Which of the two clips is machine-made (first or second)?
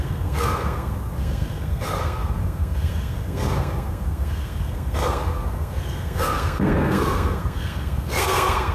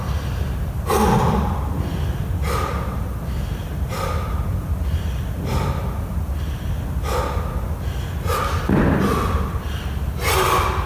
first